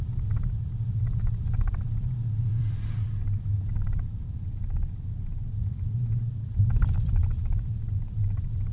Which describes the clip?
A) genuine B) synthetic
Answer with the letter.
B